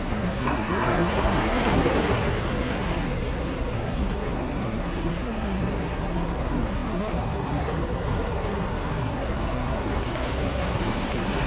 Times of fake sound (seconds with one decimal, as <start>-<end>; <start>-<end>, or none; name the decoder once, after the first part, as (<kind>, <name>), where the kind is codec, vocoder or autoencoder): 0.0-11.5 (codec, SNAC)